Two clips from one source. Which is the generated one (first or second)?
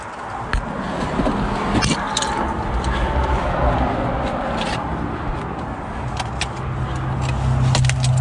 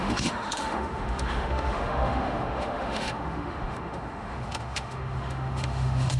second